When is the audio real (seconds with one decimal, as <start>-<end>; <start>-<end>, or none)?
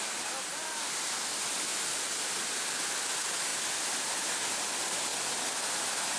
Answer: 0.0-1.7; 2.8-3.5; 4.3-6.2